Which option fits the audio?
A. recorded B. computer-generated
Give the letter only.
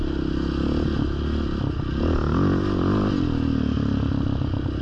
A